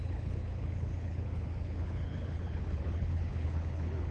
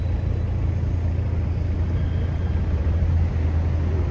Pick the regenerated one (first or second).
first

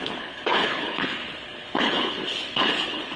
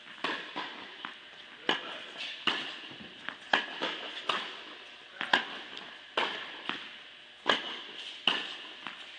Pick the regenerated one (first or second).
first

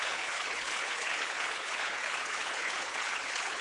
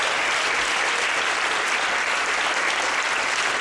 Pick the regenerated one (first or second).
first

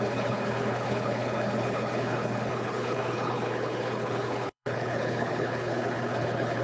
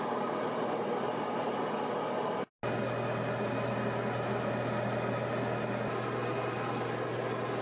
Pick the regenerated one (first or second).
first